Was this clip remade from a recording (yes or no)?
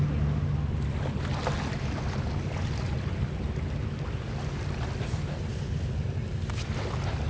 no